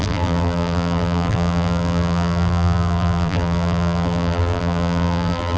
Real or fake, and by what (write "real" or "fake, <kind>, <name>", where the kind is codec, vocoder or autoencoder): fake, vocoder, BigVGAN v2